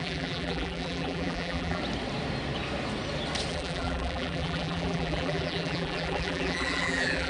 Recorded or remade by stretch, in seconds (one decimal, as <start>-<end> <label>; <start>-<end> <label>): 0.0-1.8 remade; 1.8-3.5 recorded; 3.5-7.3 remade